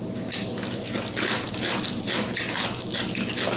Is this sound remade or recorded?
remade